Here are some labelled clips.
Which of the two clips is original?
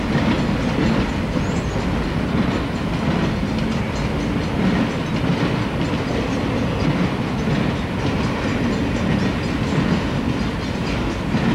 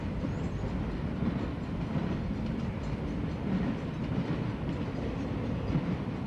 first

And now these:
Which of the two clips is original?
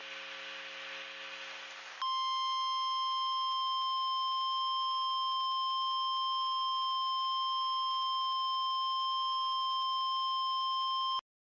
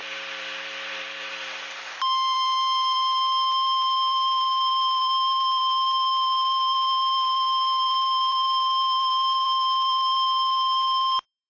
first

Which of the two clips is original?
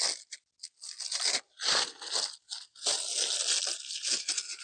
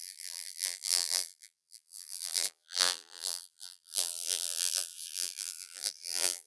first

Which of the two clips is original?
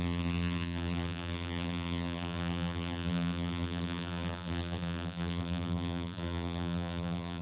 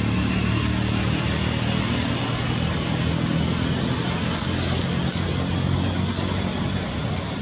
second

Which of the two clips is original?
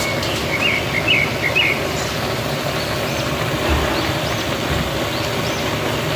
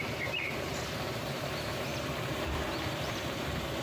first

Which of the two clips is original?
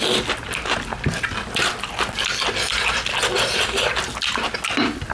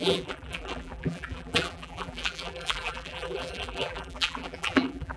first